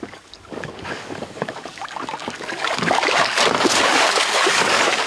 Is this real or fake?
fake